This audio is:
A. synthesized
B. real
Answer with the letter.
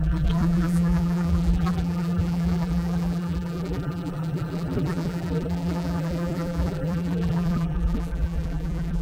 A